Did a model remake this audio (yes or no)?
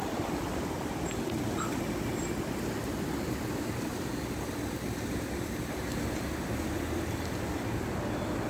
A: no